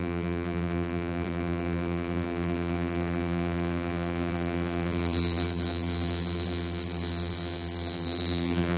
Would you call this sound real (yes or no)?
no